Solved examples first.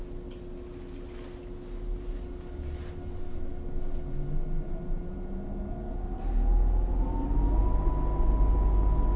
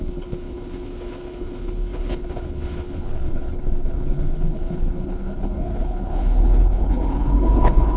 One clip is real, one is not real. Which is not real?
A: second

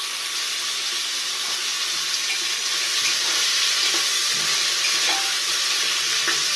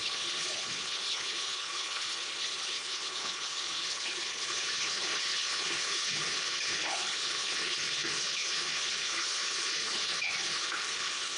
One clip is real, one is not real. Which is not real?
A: second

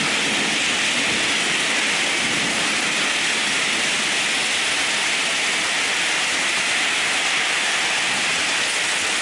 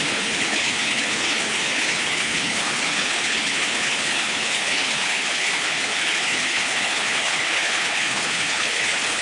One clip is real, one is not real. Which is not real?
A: second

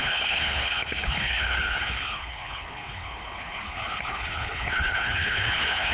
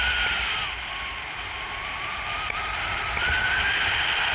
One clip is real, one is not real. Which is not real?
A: first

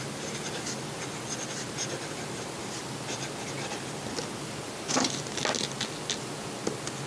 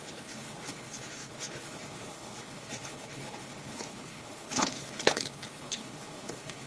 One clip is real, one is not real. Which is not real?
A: second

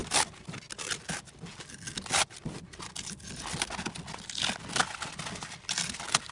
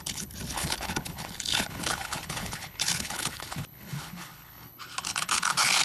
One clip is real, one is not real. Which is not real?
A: second